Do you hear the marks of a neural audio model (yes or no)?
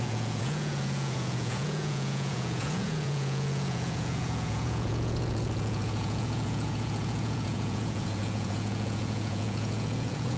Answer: yes